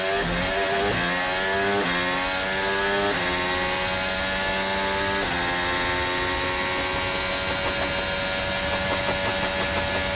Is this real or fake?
real